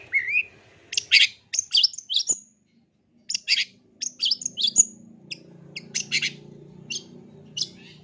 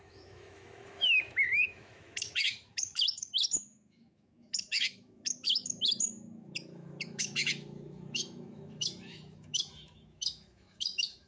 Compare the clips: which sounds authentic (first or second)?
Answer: first